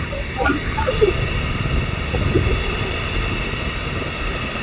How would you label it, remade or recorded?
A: recorded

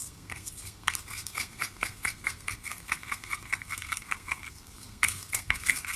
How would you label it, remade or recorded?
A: remade